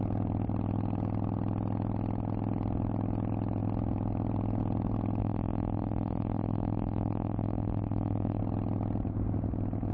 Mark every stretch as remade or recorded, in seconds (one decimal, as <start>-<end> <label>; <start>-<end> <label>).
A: 0.0-5.2 recorded; 5.2-8.4 remade; 8.4-9.9 recorded